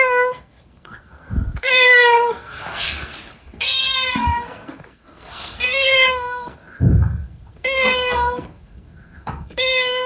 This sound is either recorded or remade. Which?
remade